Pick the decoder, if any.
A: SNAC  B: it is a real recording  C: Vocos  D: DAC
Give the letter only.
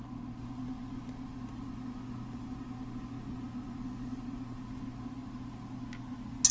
B